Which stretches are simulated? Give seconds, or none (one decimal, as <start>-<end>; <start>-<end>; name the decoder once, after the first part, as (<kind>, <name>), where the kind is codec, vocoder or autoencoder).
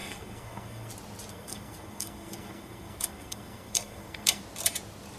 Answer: 0.0-0.9 (codec, SNAC); 1.3-4.4